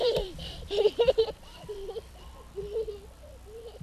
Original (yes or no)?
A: no